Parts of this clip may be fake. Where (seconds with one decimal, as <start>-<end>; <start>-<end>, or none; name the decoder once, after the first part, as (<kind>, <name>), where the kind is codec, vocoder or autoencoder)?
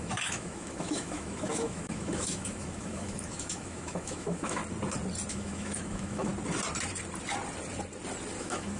0.0-4.6 (autoencoder, DAC-VAE); 5.3-6.3; 8.4-8.8